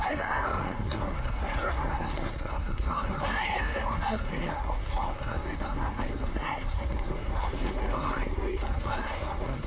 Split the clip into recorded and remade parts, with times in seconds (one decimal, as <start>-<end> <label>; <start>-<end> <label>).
0.0-9.7 remade

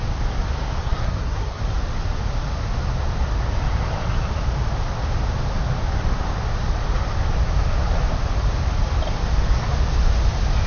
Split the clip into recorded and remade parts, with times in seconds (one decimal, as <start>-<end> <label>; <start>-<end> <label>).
0.0-0.8 recorded; 0.8-1.6 remade; 1.6-10.7 recorded

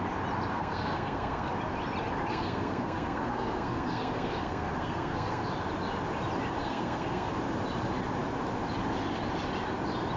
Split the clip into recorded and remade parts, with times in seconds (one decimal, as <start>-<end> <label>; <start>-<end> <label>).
0.0-0.5 recorded; 0.5-1.5 remade; 1.5-2.3 recorded; 2.3-5.4 remade; 5.4-6.6 recorded; 6.6-7.3 remade; 7.3-10.2 recorded

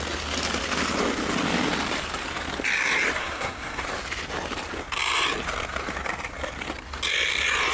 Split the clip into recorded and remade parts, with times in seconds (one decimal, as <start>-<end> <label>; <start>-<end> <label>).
0.0-3.2 recorded; 3.2-3.8 remade; 3.8-7.7 recorded

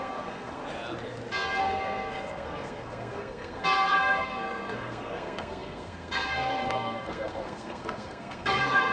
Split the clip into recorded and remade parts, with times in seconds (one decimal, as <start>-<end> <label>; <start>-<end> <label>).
0.0-0.6 remade; 0.6-1.6 recorded; 1.6-8.9 remade